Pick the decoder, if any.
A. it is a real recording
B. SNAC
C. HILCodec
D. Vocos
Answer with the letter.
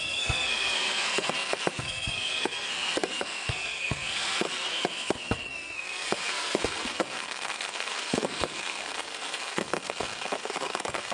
B